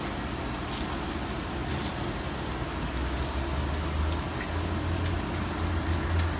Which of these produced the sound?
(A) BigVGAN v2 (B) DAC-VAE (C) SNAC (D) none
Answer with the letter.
D